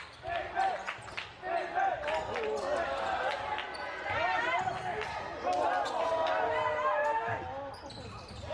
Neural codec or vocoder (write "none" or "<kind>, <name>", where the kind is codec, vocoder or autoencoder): none